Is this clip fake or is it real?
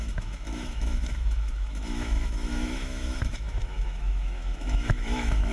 fake